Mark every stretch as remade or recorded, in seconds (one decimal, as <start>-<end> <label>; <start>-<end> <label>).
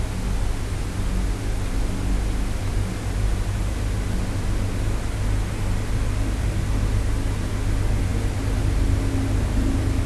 0.0-10.1 recorded